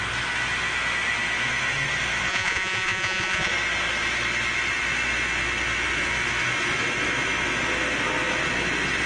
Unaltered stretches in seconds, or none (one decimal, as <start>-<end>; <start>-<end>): 0.0-2.3; 3.5-9.1